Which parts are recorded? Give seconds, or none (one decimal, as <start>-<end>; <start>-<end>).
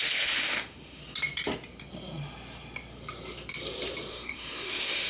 1.0-4.1